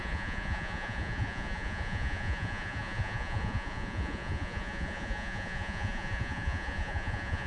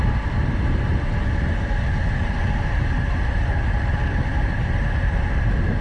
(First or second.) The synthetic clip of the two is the first